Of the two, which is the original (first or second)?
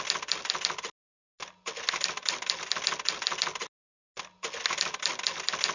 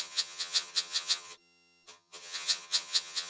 first